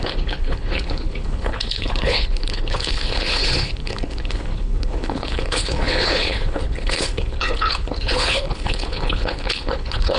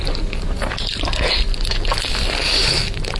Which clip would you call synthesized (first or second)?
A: first